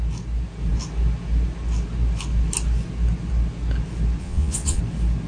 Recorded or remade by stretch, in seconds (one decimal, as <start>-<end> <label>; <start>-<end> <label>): 0.0-4.2 recorded; 4.2-4.8 remade; 4.8-5.3 recorded